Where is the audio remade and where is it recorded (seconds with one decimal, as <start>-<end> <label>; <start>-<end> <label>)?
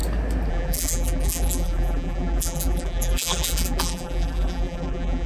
0.0-0.5 recorded; 0.5-5.3 remade